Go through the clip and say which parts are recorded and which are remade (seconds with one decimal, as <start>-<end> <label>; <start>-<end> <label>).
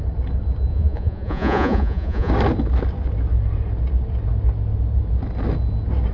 0.0-0.7 recorded; 0.7-2.3 remade; 2.3-6.1 recorded